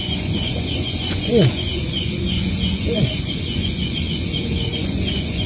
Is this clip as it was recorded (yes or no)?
no